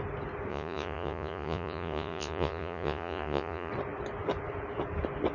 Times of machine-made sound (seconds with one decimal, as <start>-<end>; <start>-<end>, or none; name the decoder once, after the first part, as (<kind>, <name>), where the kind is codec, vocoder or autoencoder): 0.5-3.7 (vocoder, Vocos)